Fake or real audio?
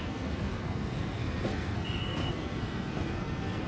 fake